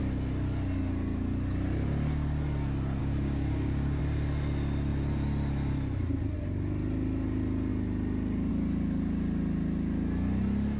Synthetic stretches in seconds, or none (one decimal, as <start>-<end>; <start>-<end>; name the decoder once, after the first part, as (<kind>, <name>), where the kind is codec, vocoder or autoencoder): 3.0-4.0 (codec, DAC)